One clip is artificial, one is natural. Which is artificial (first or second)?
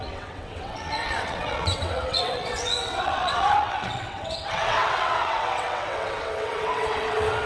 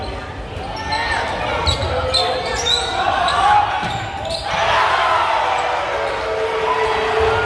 first